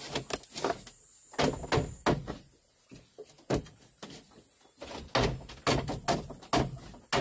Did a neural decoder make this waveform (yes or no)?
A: no